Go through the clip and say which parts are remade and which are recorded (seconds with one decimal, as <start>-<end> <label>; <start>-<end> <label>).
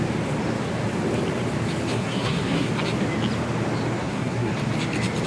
0.0-1.9 recorded; 1.9-2.7 remade; 2.7-4.0 recorded; 4.0-4.5 remade; 4.5-5.3 recorded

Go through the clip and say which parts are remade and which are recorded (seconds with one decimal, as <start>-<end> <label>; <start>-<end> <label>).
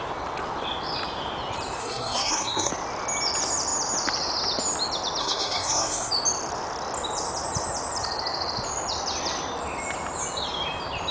0.0-1.8 recorded; 1.8-2.7 remade; 2.7-5.2 recorded; 5.2-6.1 remade; 6.1-11.1 recorded